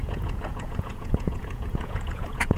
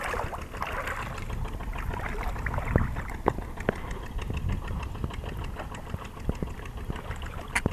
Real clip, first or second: second